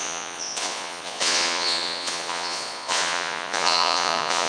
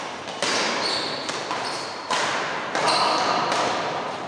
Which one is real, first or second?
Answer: second